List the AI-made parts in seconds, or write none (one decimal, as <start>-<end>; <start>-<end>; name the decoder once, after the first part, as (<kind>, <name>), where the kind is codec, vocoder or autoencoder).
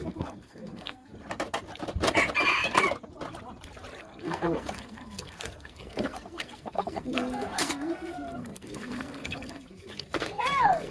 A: 0.0-1.1 (codec, SNAC); 4.0-10.9